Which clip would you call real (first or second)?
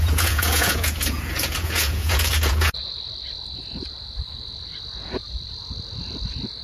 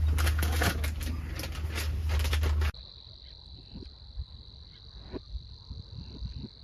second